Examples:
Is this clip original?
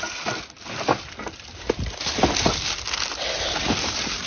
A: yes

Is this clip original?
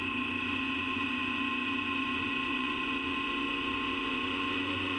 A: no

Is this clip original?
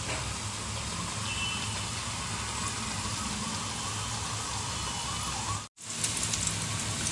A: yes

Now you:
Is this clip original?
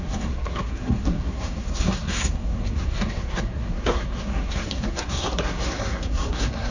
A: no